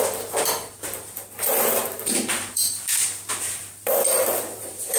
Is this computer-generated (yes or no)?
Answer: yes